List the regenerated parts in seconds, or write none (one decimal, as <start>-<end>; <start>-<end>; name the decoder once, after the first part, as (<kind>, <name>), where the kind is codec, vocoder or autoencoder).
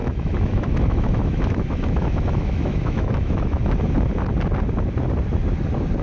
0.0-3.6 (autoencoder, DAC-VAE)